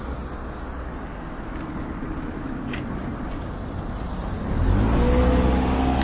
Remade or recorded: recorded